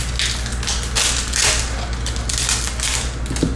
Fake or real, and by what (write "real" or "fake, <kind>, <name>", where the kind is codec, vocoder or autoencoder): real